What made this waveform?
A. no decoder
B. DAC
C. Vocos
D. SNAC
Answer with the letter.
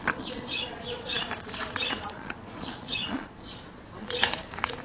C